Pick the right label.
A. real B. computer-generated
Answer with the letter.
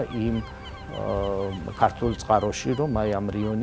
A